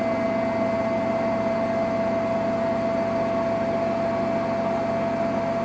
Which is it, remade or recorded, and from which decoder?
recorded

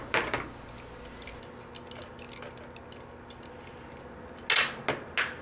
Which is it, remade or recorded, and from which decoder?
recorded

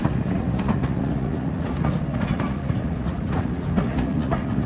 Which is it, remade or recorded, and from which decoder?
remade, vocoder, Vocos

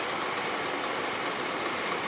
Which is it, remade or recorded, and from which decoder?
recorded